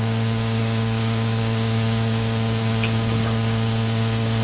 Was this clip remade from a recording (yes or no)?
yes